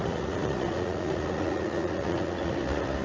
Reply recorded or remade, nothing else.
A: remade